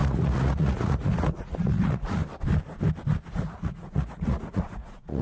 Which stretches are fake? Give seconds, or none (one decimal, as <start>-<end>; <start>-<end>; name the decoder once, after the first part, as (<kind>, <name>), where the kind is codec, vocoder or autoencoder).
0.0-2.2 (vocoder, Vocos); 3.3-5.2